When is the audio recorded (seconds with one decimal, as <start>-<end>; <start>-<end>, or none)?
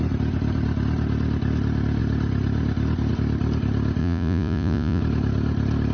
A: 0.0-4.0; 5.0-5.9